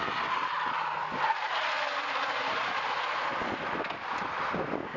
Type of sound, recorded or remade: recorded